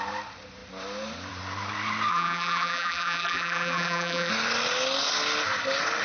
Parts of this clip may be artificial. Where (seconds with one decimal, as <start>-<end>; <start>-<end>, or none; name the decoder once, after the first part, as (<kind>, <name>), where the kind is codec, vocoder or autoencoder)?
2.1-4.3 (vocoder, BigVGAN v2)